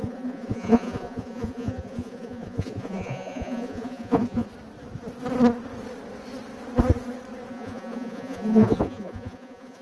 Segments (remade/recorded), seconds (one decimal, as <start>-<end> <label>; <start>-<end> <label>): 0.0-4.5 remade; 4.5-7.5 recorded; 7.5-9.8 remade